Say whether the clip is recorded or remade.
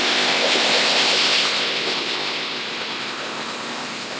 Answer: remade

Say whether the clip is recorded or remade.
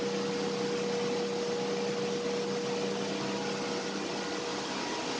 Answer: recorded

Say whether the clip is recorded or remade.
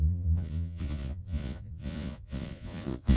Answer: remade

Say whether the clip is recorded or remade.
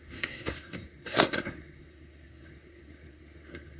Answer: remade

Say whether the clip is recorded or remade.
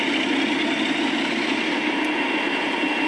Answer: recorded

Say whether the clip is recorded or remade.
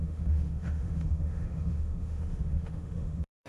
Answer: remade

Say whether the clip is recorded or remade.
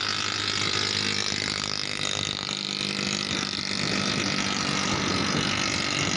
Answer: recorded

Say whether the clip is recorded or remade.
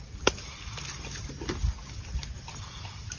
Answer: recorded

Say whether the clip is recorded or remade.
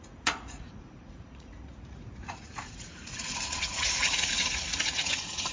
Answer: remade